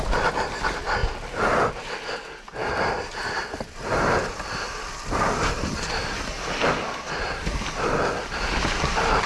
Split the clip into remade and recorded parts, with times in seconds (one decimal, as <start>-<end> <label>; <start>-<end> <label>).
0.0-9.3 recorded